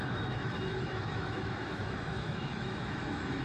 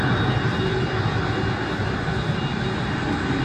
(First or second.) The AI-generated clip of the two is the first